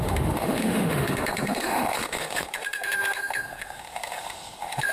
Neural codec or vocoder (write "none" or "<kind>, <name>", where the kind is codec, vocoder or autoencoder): autoencoder, DAC-VAE